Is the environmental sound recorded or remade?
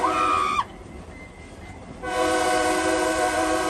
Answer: remade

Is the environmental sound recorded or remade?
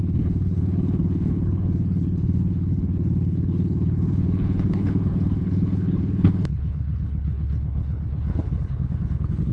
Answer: remade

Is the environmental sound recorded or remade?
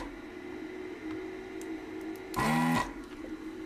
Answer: recorded